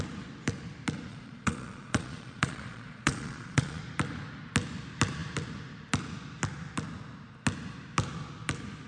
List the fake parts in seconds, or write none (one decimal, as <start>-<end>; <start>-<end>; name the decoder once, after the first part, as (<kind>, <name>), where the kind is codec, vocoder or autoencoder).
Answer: 1.1-3.8 (vocoder, Vocos)